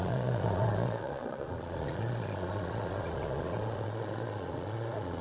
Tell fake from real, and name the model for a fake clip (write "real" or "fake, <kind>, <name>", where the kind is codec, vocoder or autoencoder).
fake, vocoder, Vocos